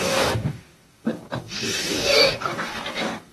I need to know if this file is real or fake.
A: fake